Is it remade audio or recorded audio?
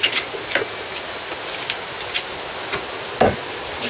recorded